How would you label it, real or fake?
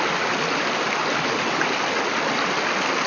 real